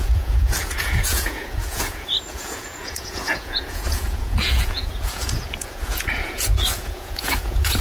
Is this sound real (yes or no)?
no